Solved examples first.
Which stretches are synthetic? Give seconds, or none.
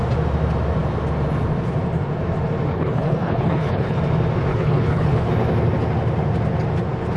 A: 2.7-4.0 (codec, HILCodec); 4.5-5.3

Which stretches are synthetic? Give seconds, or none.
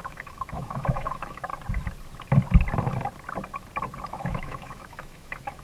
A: 0.0-1.5 (autoencoder, DAC-VAE); 4.1-5.6